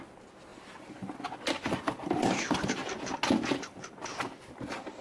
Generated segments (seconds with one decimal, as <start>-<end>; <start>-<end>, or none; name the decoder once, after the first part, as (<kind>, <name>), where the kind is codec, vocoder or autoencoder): none